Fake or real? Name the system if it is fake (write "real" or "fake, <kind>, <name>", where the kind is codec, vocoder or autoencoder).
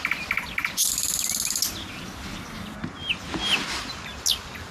real